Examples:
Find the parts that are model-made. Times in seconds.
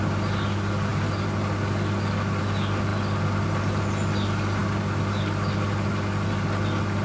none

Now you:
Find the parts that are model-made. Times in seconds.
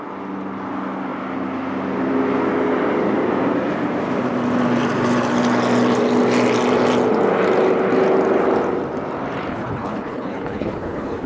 9.5-11.3 (codec, HILCodec)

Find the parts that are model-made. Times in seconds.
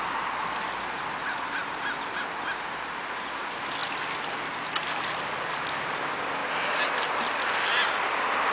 none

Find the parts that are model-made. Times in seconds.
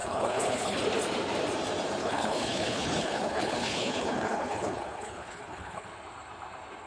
0.0-0.8 (codec, HILCodec); 2.0-5.9